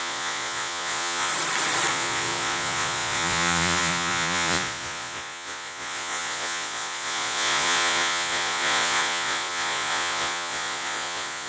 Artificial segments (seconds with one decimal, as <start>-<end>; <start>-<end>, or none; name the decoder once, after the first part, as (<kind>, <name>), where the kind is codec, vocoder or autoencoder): 0.0-1.3 (vocoder, Vocos); 1.9-11.5